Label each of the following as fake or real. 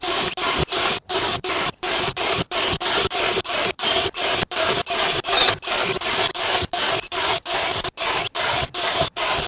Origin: fake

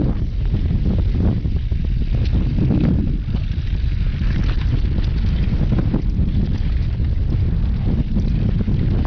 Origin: real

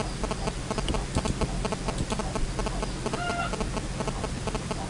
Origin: real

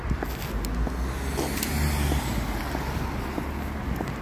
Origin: real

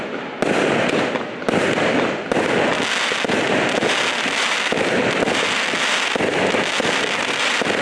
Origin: real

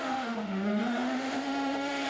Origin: fake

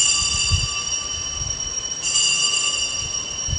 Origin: real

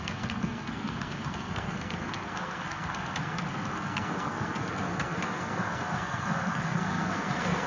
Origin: fake